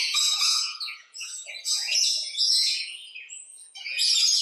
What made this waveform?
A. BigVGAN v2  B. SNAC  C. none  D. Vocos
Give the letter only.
D